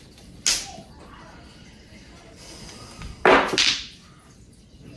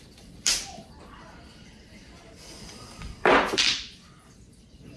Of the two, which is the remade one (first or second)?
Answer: second